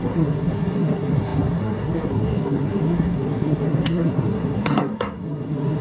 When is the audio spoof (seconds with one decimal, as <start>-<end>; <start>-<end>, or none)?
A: 0.0-5.8